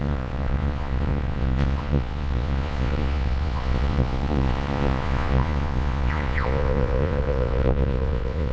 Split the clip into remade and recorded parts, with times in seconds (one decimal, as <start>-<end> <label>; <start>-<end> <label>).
0.0-8.5 remade